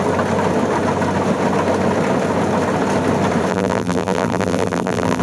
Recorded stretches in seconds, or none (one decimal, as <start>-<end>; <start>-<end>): 0.0-3.5